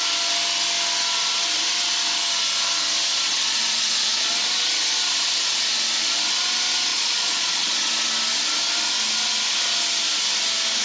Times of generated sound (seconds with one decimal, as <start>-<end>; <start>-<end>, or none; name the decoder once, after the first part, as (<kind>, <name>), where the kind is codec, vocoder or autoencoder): 3.3-4.2 (vocoder, Vocos); 6.9-7.9